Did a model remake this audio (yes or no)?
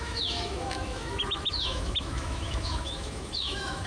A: yes